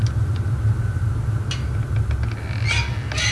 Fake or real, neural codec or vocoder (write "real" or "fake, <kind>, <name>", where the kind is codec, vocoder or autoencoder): real